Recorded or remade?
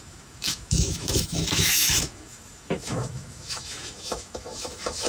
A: remade